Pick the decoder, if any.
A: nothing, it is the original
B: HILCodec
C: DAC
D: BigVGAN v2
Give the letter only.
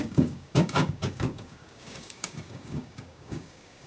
C